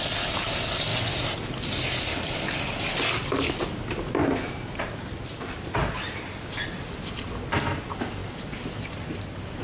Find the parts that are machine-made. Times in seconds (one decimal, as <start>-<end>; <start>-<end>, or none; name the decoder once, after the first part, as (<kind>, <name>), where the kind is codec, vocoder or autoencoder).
0.9-1.5 (vocoder, BigVGAN v2); 4.2-6.5